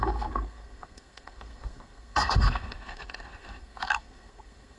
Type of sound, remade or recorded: remade